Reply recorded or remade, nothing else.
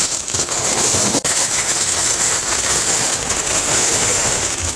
remade